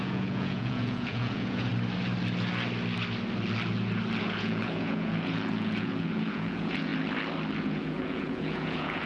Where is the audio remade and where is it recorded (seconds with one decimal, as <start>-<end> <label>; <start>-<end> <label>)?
0.0-1.7 remade; 1.7-4.2 recorded; 4.2-6.9 remade; 6.9-7.6 recorded; 7.6-9.1 remade